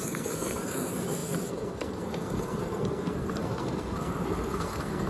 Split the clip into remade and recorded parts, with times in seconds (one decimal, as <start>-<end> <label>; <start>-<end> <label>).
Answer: 0.0-5.1 remade